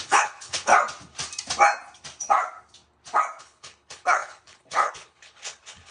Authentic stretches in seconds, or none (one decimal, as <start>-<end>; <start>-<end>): 0.7-3.4